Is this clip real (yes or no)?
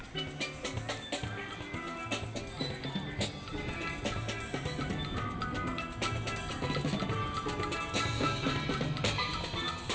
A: yes